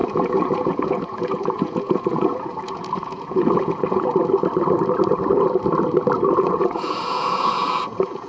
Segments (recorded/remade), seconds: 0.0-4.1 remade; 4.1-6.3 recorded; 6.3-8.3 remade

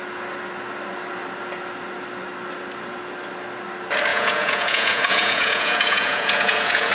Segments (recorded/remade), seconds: 0.0-4.1 recorded; 4.1-6.9 remade

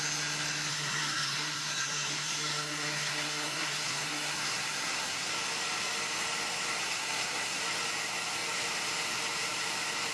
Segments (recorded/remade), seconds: 0.0-0.7 recorded; 0.7-5.3 remade; 5.3-6.8 recorded; 6.8-7.6 remade; 7.6-10.1 recorded

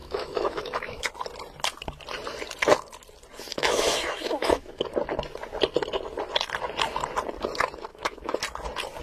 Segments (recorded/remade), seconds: 0.0-1.1 remade; 1.1-3.5 recorded; 3.5-4.8 remade; 4.8-7.9 recorded; 7.9-8.4 remade; 8.4-9.0 recorded